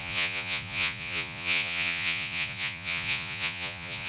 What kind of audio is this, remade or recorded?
remade